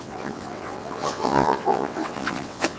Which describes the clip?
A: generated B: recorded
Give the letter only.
A